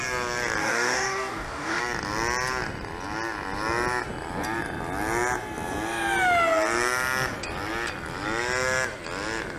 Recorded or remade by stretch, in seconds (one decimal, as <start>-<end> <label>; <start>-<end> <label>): 0.0-0.6 recorded; 0.6-1.8 remade; 1.8-9.6 recorded